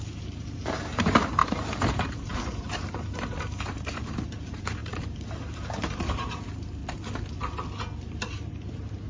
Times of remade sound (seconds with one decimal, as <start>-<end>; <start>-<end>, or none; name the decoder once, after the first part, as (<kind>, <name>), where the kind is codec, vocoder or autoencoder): 0.0-6.8 (vocoder, BigVGAN v2); 8.0-9.1